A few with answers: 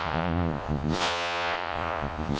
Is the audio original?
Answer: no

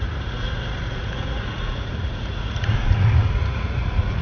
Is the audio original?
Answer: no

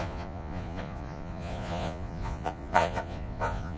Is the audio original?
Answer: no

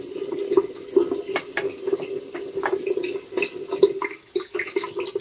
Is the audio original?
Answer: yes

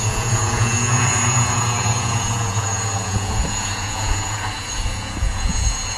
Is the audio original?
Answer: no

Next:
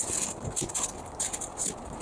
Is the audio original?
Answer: yes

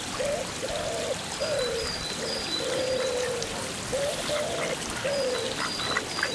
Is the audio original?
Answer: yes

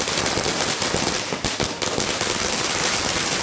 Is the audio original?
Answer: yes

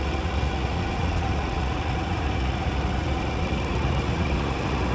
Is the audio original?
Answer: no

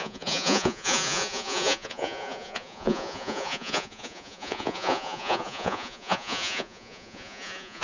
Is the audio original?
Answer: no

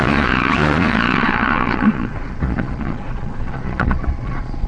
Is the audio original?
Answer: no